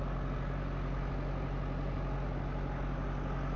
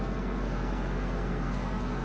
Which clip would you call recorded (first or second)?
first